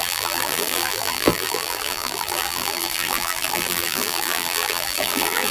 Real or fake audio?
fake